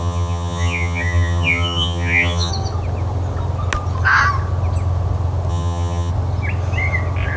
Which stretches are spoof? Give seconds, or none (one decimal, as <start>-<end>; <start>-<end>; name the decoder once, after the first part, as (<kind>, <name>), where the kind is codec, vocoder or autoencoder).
0.0-2.5 (vocoder, HiFi-GAN); 5.5-6.1